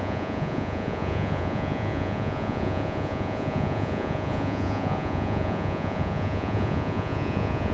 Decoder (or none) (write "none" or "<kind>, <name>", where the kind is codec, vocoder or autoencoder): vocoder, Vocos